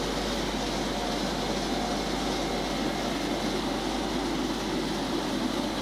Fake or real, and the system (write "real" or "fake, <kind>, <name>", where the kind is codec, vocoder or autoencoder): real